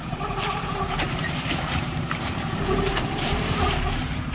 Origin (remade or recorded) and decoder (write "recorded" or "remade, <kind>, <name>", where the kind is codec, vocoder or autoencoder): remade, vocoder, BigVGAN v2